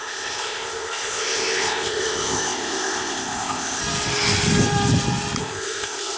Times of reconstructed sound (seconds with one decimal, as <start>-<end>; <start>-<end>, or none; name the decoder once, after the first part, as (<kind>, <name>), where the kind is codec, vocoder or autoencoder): 0.0-3.8 (codec, ZipCodec); 5.4-6.2